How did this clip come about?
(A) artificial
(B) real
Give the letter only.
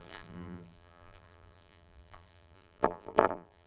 A